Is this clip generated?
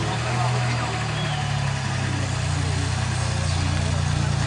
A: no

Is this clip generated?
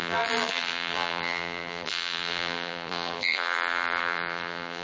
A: yes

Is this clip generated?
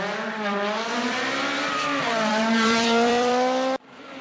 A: yes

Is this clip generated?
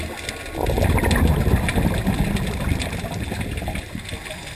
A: no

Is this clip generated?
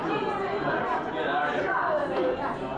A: yes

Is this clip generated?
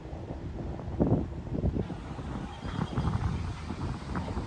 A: yes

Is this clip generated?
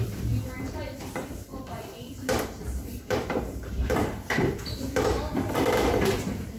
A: yes